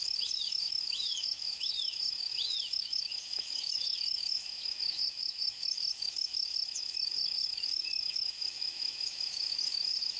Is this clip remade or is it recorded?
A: remade